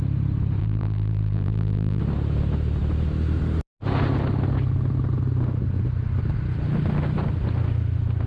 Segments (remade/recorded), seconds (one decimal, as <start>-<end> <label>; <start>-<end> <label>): 0.0-0.6 recorded; 0.6-2.0 remade; 2.0-8.3 recorded